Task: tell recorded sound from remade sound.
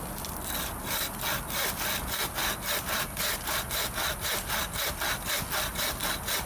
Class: recorded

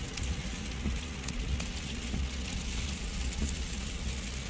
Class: remade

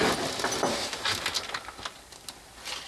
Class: recorded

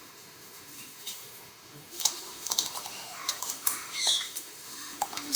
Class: remade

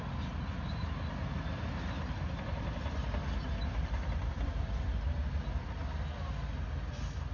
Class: recorded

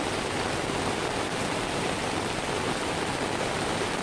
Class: recorded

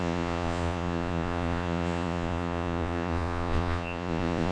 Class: remade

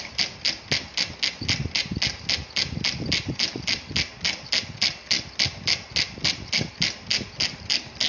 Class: recorded